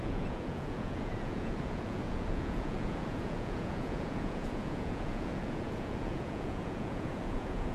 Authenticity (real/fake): fake